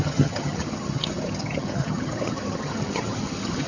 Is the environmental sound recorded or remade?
remade